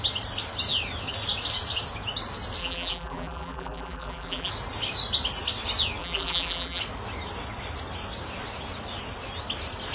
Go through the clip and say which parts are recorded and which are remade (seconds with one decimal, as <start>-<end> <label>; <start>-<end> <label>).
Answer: 0.0-2.6 recorded; 2.6-4.5 remade; 4.5-6.0 recorded; 6.0-6.8 remade; 6.8-9.9 recorded